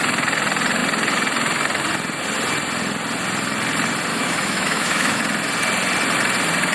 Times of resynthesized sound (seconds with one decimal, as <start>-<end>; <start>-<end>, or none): 4.1-5.2